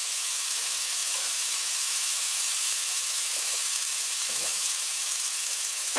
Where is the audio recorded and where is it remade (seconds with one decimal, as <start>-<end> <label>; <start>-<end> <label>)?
0.0-6.0 remade